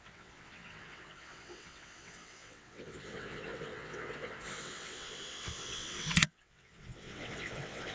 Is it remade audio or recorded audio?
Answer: remade